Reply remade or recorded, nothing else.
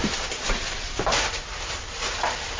remade